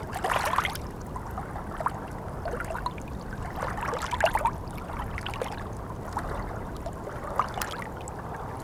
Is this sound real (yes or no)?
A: yes